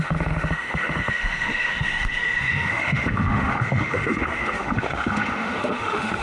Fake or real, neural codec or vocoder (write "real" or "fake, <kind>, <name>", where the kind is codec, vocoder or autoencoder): fake, autoencoder, DAC-VAE